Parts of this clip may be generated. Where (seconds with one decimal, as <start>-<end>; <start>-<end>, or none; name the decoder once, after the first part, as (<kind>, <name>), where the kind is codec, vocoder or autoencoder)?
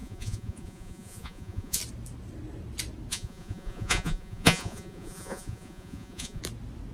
0.0-1.8 (vocoder, Vocos); 3.1-6.4